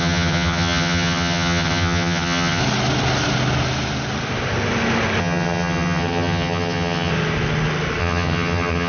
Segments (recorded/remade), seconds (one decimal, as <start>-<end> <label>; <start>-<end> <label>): 0.0-2.6 remade; 2.6-5.2 recorded; 5.2-7.1 remade; 7.1-8.0 recorded; 8.0-8.9 remade